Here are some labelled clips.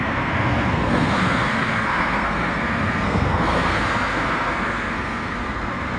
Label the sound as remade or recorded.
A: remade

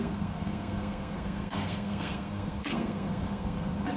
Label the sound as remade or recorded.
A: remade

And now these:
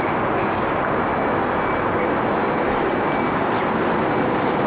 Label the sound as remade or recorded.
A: recorded